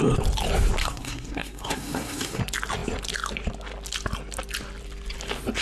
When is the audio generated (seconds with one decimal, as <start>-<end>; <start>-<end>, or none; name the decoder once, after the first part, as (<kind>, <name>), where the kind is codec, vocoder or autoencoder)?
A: 0.8-2.4 (codec, SNAC)